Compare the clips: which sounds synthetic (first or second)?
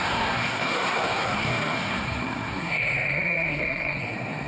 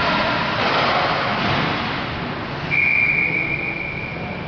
first